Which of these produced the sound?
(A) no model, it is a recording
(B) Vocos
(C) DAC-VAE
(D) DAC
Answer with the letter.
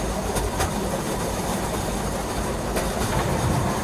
A